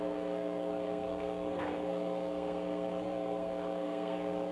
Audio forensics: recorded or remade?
remade